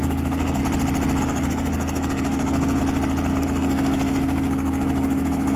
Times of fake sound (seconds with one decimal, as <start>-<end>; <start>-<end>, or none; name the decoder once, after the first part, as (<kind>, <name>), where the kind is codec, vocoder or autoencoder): 0.0-0.6 (codec, SNAC); 1.2-2.8; 3.3-5.6

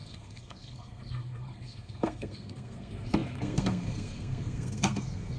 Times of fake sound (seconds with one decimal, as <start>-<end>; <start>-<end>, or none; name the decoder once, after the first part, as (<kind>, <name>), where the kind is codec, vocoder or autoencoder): 0.0-5.4 (codec, SNAC)

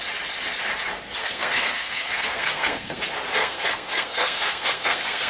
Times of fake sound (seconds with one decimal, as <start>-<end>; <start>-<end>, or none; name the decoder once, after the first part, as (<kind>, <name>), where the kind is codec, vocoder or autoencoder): 1.2-3.0 (codec, SNAC); 3.4-5.3

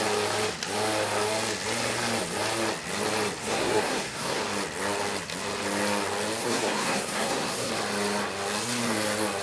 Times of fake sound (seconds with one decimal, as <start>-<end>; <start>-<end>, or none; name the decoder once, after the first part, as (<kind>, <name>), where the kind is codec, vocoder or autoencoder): 3.4-4.4 (codec, SNAC); 6.4-7.7

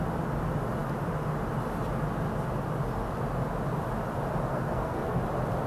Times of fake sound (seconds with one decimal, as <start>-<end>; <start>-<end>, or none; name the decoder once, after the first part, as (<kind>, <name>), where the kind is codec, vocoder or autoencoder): 4.5-5.2 (codec, SNAC)

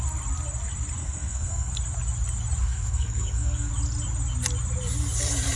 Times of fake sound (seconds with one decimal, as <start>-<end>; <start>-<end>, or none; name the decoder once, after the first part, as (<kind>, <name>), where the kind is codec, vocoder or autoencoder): 1.0-1.7 (codec, SNAC); 2.6-3.7

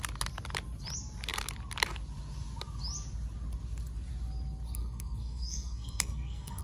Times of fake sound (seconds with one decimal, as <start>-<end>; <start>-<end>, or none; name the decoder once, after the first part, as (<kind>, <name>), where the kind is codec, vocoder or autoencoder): 4.8-6.6 (codec, SNAC)

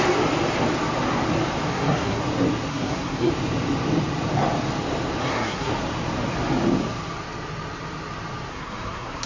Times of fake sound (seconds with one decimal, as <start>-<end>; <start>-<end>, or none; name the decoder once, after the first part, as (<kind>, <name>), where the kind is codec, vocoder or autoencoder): 1.7-2.2 (codec, SNAC); 2.7-3.3; 5.2-5.7; 8.5-9.3